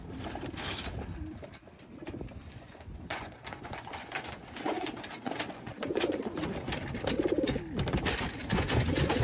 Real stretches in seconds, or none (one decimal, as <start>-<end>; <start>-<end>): 0.0-2.4; 6.5-8.4